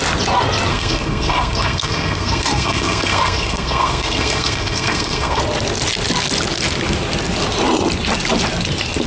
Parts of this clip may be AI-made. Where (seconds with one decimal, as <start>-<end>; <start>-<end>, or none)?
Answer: 0.7-5.4